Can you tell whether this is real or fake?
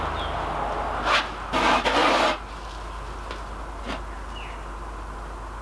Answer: real